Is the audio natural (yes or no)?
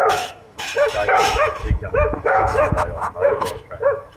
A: no